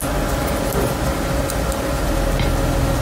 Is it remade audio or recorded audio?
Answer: recorded